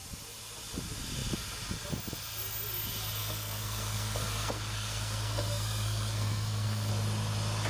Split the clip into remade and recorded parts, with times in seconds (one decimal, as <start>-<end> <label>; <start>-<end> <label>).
0.0-3.2 recorded; 3.2-6.9 remade; 6.9-7.7 recorded